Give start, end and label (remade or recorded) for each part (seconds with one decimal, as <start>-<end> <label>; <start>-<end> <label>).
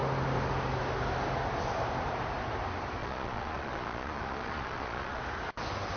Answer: 0.0-3.0 recorded; 3.0-5.2 remade; 5.2-6.0 recorded